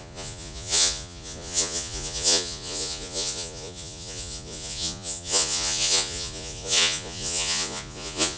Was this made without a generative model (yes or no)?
no